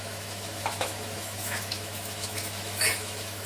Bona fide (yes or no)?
no